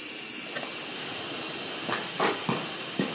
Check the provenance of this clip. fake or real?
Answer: real